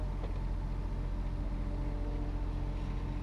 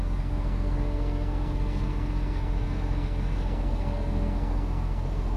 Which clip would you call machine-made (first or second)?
second